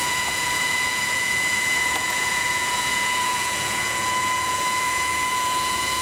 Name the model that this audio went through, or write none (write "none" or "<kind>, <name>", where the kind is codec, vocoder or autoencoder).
vocoder, Vocos